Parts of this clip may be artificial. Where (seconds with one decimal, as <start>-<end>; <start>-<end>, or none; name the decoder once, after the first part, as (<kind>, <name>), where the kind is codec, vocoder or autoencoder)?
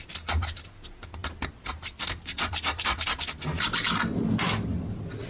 none